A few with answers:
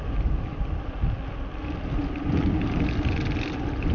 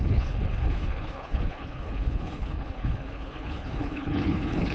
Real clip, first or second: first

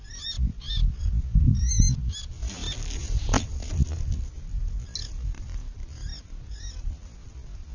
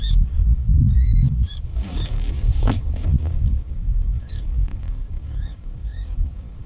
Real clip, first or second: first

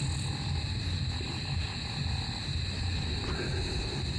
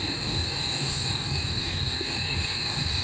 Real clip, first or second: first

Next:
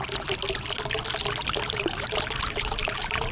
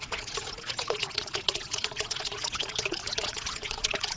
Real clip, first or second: first